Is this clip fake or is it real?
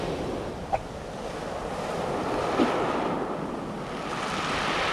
real